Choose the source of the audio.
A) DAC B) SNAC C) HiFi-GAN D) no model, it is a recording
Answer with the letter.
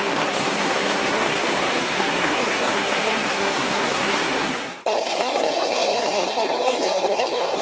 B